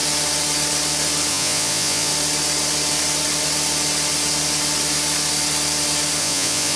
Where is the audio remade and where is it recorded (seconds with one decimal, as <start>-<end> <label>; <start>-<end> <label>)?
0.0-1.3 recorded; 1.3-2.1 remade; 2.1-6.2 recorded; 6.2-6.8 remade